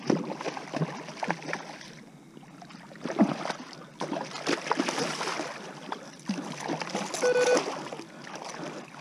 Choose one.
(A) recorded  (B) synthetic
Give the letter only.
A